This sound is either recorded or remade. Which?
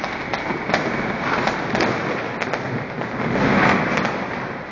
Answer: recorded